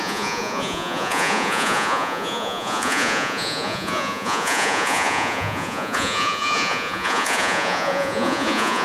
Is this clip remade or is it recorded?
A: remade